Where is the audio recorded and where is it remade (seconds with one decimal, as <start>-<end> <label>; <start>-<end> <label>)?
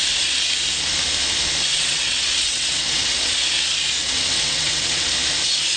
0.0-1.7 recorded; 1.7-3.4 remade; 3.4-4.0 recorded; 4.0-5.1 remade; 5.1-5.8 recorded